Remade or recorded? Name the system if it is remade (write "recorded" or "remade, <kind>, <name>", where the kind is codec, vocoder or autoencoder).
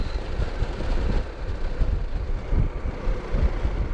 recorded